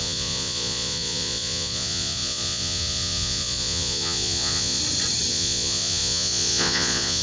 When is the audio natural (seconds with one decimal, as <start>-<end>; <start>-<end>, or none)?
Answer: 4.8-5.3